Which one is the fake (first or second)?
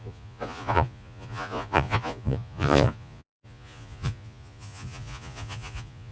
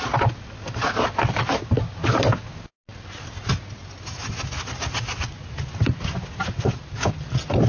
first